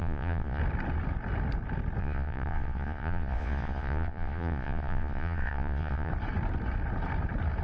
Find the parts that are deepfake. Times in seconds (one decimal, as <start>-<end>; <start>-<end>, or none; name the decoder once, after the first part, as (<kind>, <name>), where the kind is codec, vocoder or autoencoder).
0.0-0.6 (vocoder, Vocos); 2.0-6.1